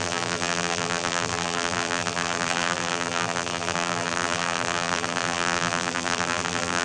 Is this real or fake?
fake